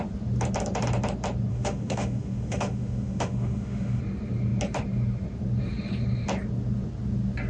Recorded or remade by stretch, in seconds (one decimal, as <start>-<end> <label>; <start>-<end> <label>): 0.0-1.5 recorded; 1.5-4.0 remade; 4.0-7.5 recorded